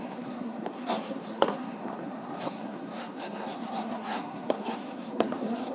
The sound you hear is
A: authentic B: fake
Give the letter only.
B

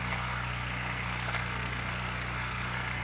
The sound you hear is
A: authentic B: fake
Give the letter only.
B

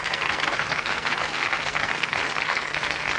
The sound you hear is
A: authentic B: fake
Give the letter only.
B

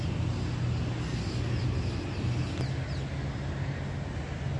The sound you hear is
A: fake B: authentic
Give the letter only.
B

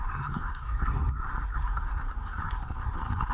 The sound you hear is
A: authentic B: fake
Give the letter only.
B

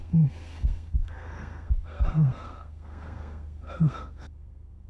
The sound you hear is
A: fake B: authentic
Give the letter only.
A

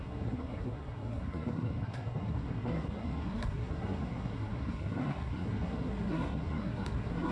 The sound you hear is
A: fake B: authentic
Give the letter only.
A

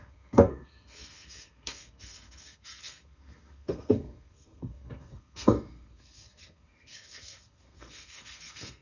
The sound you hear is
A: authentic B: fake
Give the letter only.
B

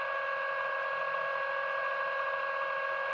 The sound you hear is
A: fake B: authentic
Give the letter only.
B